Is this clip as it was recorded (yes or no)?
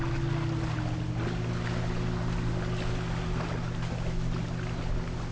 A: yes